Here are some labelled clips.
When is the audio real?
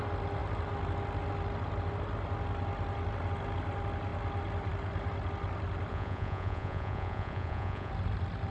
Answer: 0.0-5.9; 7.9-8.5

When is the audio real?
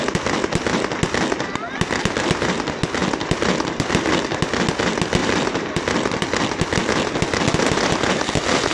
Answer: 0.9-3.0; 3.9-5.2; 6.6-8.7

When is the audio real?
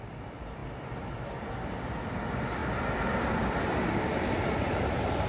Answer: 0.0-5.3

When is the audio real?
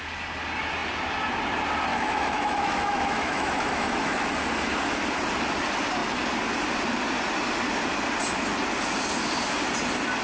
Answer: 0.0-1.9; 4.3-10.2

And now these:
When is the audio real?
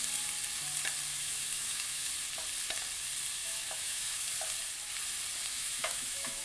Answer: 0.0-1.1; 2.1-3.4; 4.2-5.4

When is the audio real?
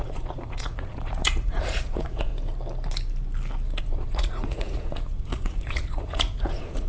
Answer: 2.3-3.8